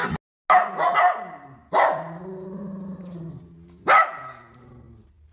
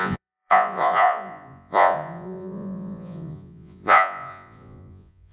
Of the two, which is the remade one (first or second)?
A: second